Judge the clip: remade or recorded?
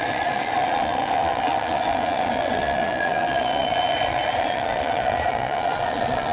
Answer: remade